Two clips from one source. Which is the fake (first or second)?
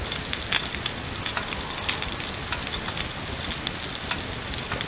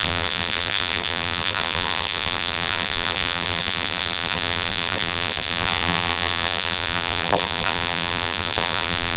second